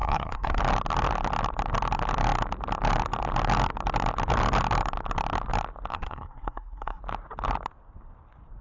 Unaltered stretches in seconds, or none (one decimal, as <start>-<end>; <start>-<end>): 0.6-5.9; 7.0-8.6